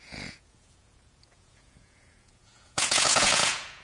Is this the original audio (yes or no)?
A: no